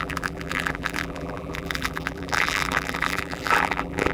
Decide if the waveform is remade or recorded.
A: remade